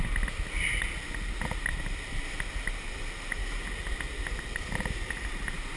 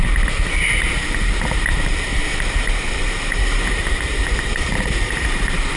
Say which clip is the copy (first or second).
second